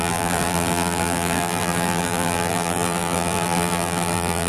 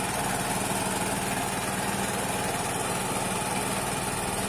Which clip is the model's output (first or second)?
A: first